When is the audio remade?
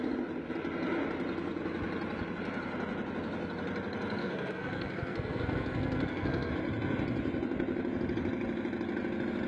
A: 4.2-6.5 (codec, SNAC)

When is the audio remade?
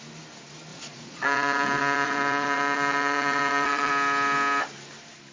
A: 0.7-3.9 (vocoder, Vocos)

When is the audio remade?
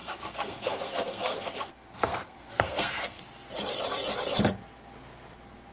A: 0.0-3.2 (codec, SNAC)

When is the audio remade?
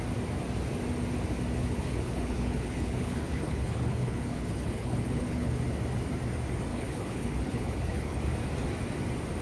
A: 1.6-5.5 (codec, HILCodec); 6.7-8.2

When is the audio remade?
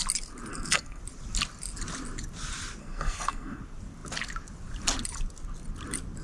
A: 0.5-1.0 (codec, SNAC); 2.8-3.6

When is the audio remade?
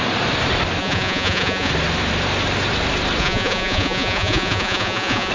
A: 0.8-1.7 (vocoder, Vocos); 3.2-5.3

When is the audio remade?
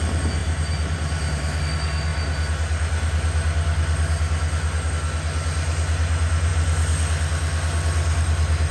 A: 0.4-1.6 (vocoder, BigVGAN v2)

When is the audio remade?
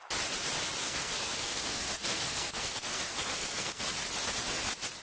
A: 0.8-3.8 (codec, SNAC)